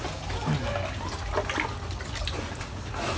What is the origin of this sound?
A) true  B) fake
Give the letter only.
A